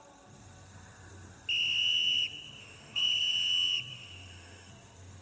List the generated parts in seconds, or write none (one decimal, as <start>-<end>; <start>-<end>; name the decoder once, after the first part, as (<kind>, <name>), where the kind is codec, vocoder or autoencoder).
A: 2.6-3.1 (autoencoder, DAC-VAE); 3.9-4.7